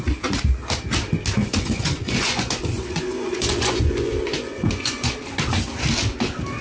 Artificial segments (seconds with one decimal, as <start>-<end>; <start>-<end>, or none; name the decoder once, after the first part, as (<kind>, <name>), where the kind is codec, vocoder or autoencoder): 1.4-5.1 (vocoder, Vocos)